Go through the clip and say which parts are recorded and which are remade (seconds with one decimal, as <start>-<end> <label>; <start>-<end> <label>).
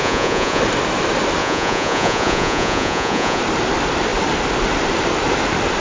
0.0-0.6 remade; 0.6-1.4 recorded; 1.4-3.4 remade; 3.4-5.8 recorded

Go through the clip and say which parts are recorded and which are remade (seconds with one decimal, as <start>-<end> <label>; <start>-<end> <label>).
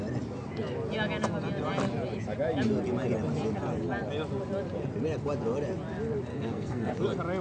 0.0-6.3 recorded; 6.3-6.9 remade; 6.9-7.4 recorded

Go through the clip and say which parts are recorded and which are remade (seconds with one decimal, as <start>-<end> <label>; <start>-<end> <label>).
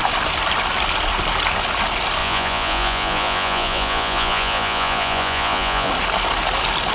0.0-2.2 recorded; 2.2-5.9 remade; 5.9-6.9 recorded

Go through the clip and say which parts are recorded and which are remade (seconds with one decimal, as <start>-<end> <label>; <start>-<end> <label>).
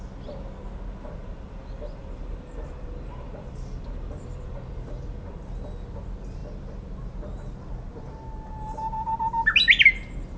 0.0-1.2 recorded; 1.2-5.4 remade; 5.4-10.4 recorded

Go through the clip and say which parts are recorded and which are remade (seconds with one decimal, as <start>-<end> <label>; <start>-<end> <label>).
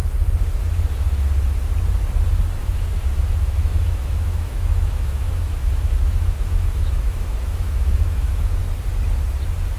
0.0-2.6 recorded; 2.6-8.6 remade; 8.6-9.8 recorded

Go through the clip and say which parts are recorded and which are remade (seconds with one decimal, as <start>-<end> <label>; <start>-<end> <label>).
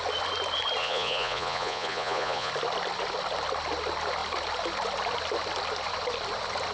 0.0-0.8 recorded; 0.8-2.5 remade; 2.5-6.7 recorded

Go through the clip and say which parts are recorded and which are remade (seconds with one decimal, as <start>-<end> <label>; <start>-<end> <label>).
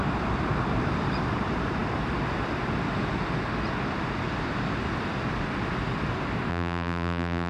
0.0-6.5 recorded; 6.5-7.5 remade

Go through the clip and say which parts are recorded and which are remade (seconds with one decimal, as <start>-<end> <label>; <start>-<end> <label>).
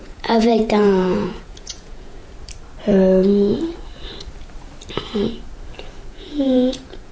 0.0-2.2 remade; 2.2-6.1 recorded; 6.1-7.1 remade